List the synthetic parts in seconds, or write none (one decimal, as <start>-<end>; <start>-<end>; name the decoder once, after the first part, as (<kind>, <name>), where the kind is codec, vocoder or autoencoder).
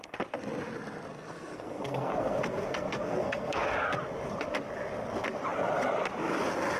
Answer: 1.1-3.6 (codec, SNAC)